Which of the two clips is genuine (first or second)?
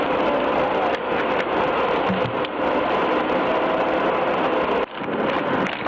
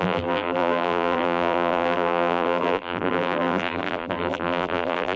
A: first